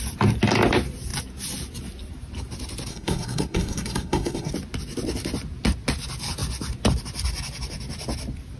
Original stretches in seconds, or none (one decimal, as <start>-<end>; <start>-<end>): 0.0-2.9; 4.5-8.6